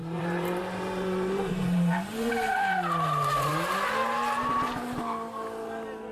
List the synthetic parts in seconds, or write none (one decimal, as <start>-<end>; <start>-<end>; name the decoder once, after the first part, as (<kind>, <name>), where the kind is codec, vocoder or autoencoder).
0.0-3.5 (vocoder, BigVGAN v2)